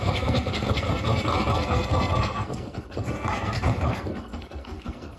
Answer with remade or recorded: remade